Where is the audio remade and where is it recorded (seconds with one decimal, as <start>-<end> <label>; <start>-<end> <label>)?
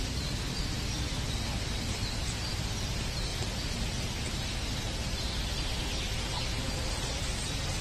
0.0-7.8 recorded